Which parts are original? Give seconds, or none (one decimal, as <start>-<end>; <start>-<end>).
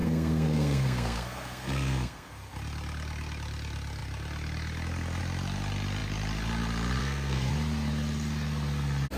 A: 2.3-7.0; 7.5-9.2